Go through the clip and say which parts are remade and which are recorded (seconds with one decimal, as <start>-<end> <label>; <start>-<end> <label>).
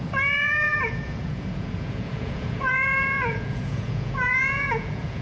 0.0-5.2 remade